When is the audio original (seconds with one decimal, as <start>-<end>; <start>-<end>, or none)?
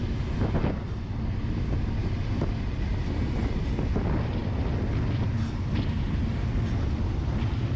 0.9-2.0; 3.4-7.8